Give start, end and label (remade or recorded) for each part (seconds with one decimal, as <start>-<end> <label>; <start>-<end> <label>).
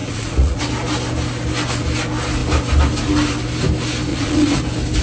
0.0-0.6 remade; 0.6-4.1 recorded; 4.1-4.6 remade; 4.6-5.0 recorded